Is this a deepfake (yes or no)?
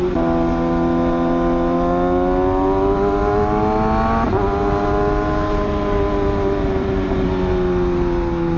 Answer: no